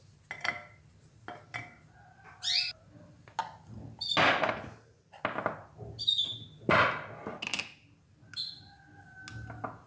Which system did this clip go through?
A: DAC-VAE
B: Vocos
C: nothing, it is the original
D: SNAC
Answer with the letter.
C